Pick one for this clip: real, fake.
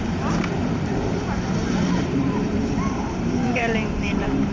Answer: fake